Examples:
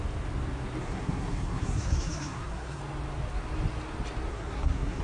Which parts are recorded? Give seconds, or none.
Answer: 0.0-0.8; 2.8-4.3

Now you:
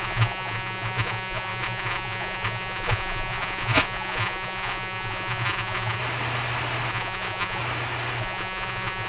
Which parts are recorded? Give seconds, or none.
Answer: 6.0-6.9; 7.6-8.2

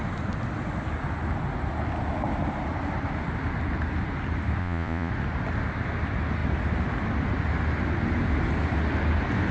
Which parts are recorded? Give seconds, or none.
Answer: 0.0-4.6; 5.1-9.5

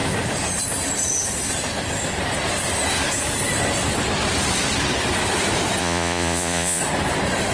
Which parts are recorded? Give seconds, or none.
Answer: 0.0-5.8; 6.8-7.5

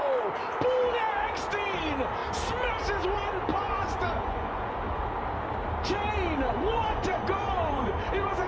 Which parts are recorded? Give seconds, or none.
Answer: 0.0-3.5; 5.0-6.5

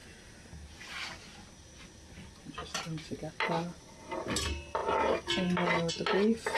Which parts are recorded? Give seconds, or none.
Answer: 0.0-6.6